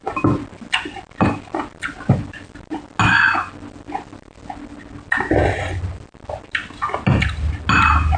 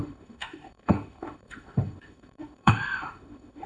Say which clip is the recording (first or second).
first